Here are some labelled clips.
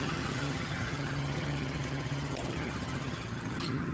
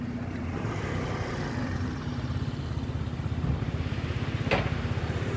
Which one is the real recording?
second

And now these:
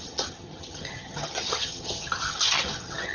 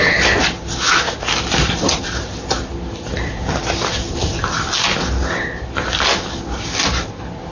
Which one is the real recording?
second